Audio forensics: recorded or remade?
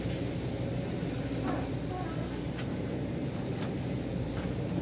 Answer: remade